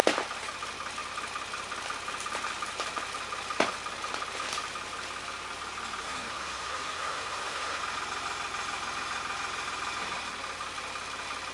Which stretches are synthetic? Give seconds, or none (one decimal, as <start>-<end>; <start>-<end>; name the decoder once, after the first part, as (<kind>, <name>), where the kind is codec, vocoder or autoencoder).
6.0-7.8 (codec, SNAC)